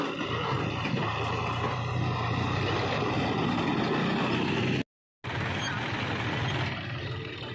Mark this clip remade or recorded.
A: recorded